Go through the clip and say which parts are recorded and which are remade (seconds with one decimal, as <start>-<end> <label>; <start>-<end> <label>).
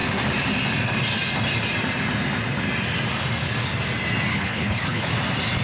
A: 0.0-4.3 recorded; 4.3-5.1 remade; 5.1-5.6 recorded